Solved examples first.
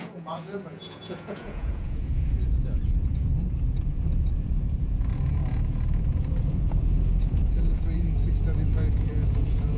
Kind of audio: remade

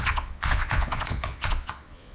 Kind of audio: remade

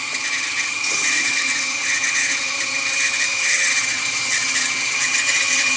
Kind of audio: remade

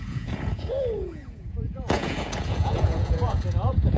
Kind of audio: remade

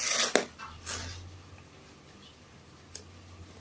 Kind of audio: recorded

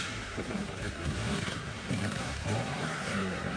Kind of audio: remade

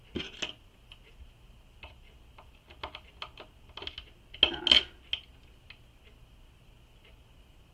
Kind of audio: recorded